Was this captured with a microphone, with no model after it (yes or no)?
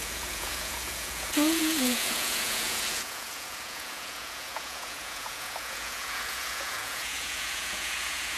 no